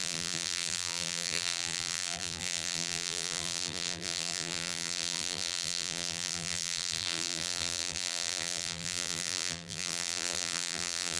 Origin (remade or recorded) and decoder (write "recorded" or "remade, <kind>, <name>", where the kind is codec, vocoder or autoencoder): remade, vocoder, BigVGAN v2